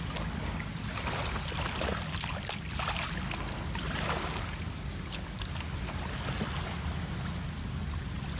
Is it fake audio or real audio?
real